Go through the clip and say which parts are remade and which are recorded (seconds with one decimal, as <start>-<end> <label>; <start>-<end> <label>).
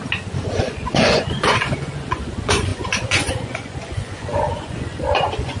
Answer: 0.0-0.6 recorded; 0.6-5.6 remade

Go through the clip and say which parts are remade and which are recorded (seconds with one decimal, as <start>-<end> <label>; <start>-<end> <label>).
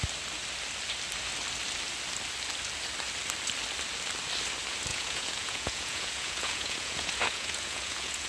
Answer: 0.0-4.9 recorded; 4.9-8.3 remade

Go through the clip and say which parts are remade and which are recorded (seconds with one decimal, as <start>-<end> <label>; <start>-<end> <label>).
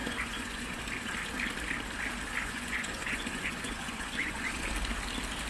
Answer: 0.0-0.8 remade; 0.8-2.4 recorded; 2.4-4.7 remade; 4.7-5.5 recorded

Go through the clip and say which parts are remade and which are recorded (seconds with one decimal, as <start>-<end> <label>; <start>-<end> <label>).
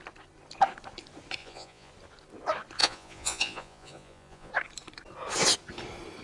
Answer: 0.0-1.4 recorded; 1.4-1.9 remade; 1.9-2.8 recorded; 2.8-4.5 remade; 4.5-6.2 recorded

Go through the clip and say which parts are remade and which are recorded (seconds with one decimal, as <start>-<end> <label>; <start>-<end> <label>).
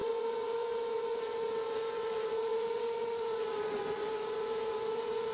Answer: 0.0-5.3 remade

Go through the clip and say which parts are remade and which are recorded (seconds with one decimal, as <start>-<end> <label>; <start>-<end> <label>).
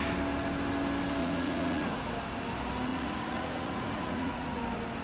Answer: 0.0-1.2 recorded; 1.2-2.1 remade; 2.1-2.9 recorded; 2.9-4.6 remade; 4.6-5.0 recorded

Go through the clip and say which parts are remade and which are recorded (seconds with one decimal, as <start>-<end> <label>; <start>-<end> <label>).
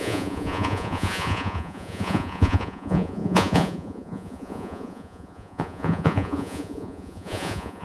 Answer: 0.0-7.8 remade